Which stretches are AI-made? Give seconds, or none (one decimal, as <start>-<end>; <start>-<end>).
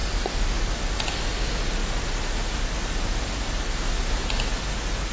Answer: none